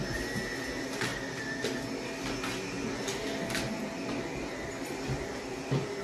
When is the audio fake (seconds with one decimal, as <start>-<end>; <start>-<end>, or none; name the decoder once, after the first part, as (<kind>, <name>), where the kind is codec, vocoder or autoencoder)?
none